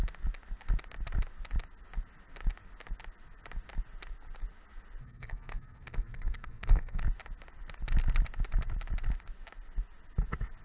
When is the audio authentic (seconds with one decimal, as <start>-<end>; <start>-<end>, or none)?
0.0-5.0; 7.0-10.6